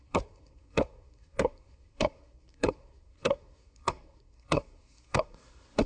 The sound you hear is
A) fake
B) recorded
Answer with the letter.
A